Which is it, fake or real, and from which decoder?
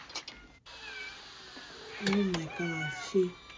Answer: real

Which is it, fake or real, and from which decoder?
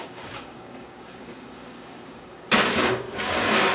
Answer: fake, codec, DAC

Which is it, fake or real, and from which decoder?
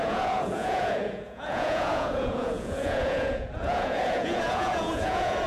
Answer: fake, vocoder, Vocos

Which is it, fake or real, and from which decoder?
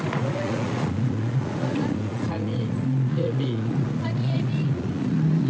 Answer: fake, vocoder, Vocos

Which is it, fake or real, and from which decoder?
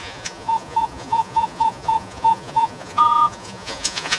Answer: fake, vocoder, Vocos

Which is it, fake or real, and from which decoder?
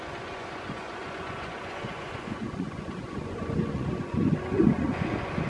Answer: fake, vocoder, Vocos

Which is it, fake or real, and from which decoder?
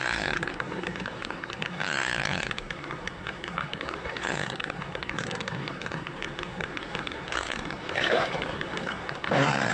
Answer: fake, codec, SNAC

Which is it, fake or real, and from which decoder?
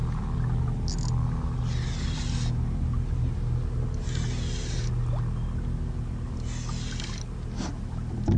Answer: real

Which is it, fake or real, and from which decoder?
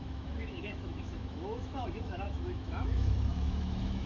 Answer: fake, autoencoder, DAC-VAE